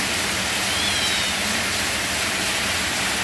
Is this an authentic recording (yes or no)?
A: yes